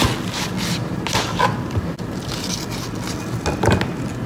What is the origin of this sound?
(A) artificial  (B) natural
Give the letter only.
B